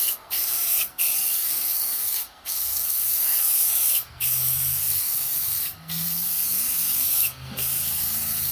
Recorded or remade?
remade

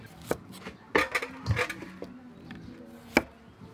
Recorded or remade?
recorded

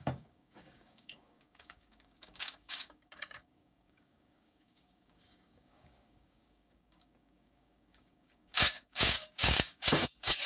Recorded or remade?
remade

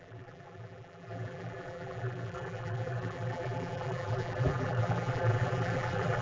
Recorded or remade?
remade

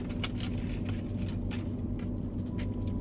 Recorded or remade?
recorded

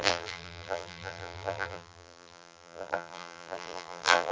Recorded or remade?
remade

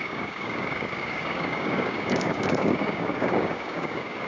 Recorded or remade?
remade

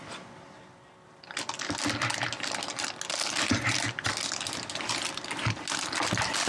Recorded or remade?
recorded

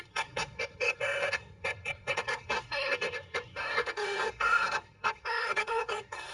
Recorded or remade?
remade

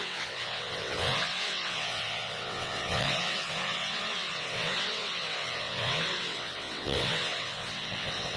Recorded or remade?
remade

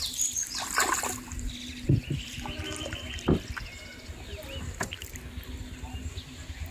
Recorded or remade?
recorded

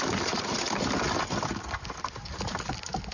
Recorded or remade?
recorded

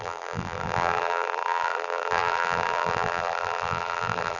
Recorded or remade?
remade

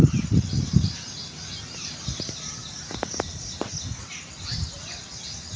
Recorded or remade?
recorded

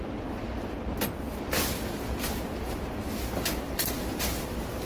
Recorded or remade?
recorded